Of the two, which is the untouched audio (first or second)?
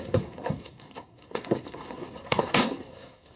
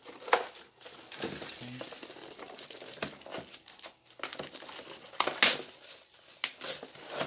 second